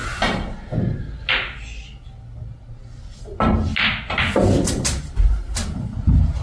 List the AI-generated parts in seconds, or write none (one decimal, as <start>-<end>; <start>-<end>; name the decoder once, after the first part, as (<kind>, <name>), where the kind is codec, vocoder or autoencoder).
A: none

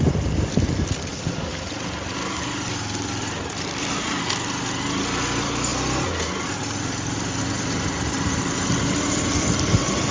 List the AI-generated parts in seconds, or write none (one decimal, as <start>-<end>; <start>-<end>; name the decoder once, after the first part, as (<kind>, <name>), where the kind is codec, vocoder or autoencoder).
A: none

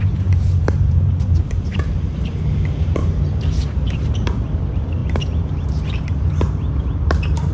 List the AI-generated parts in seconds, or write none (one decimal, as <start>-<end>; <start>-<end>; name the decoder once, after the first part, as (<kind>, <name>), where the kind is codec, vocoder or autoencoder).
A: 0.0-7.5 (vocoder, BigVGAN v2)